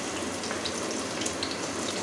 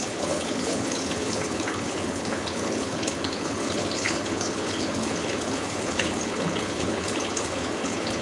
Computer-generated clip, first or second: second